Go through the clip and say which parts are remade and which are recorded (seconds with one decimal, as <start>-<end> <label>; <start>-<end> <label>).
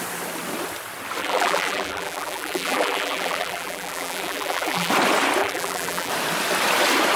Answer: 0.0-1.2 recorded; 1.2-4.9 remade; 4.9-5.4 recorded; 5.4-6.1 remade; 6.1-7.2 recorded